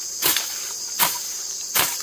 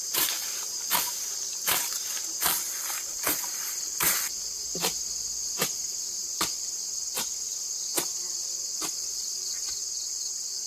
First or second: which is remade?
second